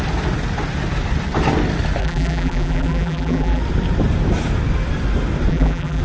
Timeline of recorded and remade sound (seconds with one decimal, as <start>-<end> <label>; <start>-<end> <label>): 0.0-2.0 recorded; 2.0-3.6 remade; 3.6-5.5 recorded; 5.5-6.0 remade